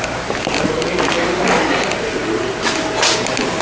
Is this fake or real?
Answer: real